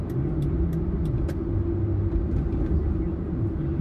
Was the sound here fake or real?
real